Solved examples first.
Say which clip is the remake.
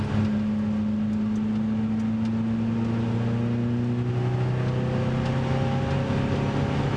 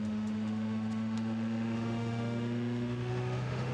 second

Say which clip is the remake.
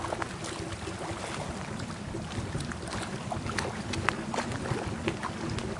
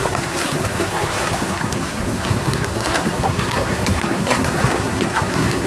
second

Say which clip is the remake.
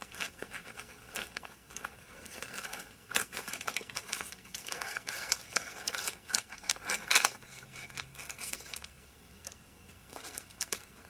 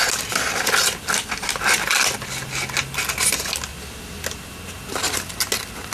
first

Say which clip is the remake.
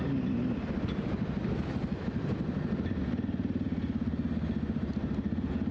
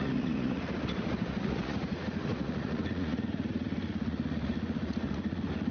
second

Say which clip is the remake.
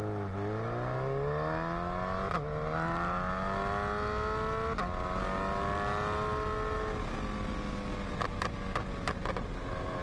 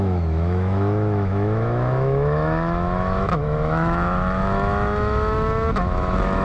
second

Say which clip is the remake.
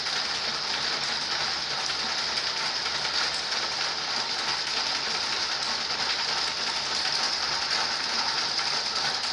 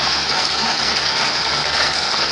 second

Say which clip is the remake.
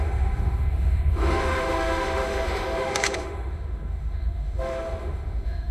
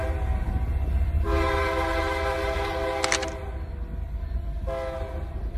first